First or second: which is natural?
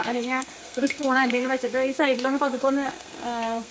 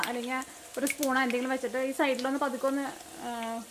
second